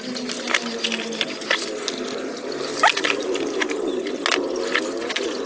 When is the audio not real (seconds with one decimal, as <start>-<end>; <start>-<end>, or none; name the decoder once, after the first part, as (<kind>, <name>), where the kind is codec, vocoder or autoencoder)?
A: 2.9-4.0 (vocoder, BigVGAN v2)